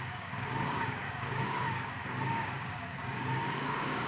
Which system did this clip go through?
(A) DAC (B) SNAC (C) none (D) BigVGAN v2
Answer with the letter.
A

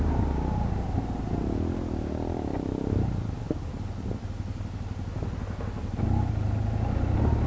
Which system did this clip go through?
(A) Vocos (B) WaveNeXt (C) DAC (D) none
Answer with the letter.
D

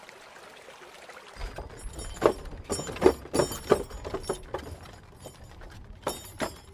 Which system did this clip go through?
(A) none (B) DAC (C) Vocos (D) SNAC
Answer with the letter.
A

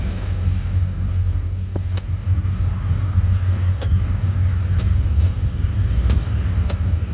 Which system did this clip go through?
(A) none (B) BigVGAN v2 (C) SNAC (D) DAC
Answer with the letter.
D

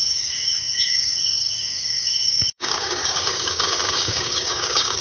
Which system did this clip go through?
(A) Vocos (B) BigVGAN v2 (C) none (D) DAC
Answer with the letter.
D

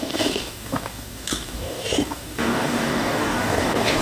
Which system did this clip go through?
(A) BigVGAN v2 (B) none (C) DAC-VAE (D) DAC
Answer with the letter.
D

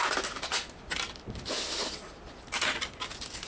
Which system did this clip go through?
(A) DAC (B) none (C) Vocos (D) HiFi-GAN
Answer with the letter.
B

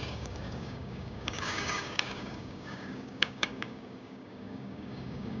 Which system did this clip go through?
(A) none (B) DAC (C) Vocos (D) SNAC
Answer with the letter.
B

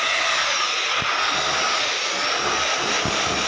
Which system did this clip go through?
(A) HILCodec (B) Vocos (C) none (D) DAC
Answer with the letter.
C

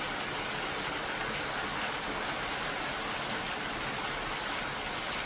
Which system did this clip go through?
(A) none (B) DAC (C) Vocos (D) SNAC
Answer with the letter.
A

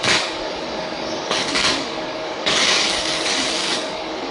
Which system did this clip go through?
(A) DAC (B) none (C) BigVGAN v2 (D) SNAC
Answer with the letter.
A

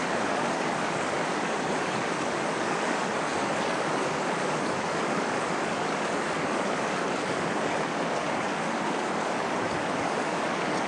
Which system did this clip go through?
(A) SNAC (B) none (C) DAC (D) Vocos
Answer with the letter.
C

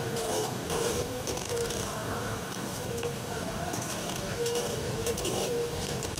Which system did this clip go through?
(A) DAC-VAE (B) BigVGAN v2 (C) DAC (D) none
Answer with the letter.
C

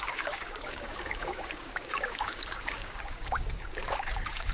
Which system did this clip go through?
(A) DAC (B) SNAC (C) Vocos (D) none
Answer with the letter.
A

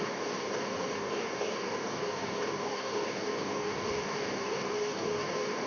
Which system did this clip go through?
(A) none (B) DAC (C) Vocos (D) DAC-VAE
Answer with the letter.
B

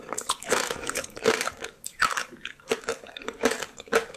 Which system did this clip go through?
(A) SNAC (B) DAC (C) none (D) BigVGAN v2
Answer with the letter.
B